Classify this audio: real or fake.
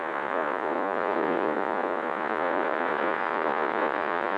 fake